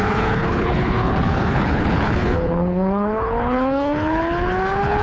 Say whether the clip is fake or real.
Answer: fake